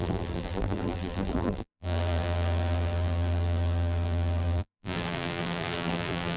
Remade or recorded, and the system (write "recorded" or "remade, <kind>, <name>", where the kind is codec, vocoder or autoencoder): remade, vocoder, BigVGAN v2